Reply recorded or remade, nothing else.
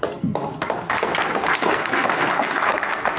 remade